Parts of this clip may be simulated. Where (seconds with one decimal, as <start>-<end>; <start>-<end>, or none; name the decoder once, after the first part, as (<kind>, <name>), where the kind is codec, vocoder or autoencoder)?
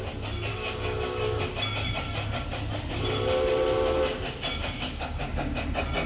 0.5-1.4 (codec, DAC); 4.6-5.2